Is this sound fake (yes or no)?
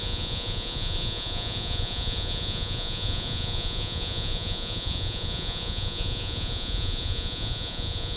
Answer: yes